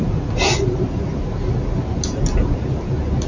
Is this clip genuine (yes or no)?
yes